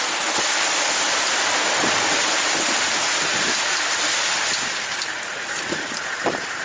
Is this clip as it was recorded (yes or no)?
yes